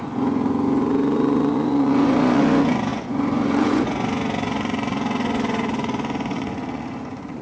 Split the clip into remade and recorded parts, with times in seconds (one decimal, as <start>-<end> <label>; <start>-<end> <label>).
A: 0.0-7.4 remade